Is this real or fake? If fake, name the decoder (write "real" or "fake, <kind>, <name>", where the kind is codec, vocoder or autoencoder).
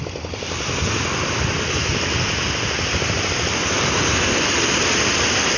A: real